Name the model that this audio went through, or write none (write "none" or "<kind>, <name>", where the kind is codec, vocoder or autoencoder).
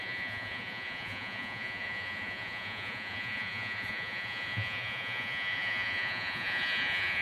vocoder, Vocos